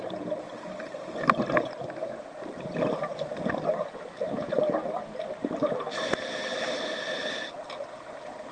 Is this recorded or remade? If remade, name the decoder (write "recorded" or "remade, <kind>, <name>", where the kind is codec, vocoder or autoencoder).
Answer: recorded